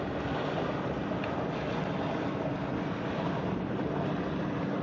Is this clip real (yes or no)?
yes